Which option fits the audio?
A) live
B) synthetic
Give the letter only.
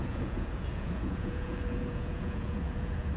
B